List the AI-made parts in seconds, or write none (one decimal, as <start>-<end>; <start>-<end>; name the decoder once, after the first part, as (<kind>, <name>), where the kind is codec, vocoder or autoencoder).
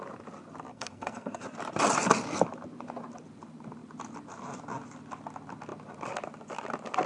0.7-1.4 (codec, SNAC)